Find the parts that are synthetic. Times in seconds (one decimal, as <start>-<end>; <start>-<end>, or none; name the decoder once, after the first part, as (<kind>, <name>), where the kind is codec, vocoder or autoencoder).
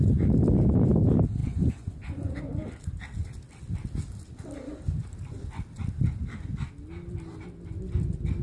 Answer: 1.4-2.4 (vocoder, Vocos)